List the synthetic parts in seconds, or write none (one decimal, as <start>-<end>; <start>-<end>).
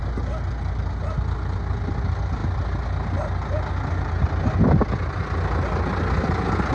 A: none